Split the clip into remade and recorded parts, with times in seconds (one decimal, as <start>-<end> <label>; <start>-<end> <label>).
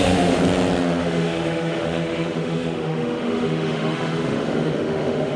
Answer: 0.0-0.4 remade; 0.4-1.0 recorded; 1.0-5.4 remade